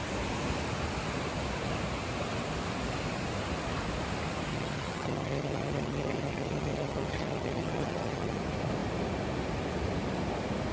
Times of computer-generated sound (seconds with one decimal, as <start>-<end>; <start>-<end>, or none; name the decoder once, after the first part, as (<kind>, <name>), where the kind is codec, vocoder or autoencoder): 4.5-8.4 (vocoder, HiFi-GAN)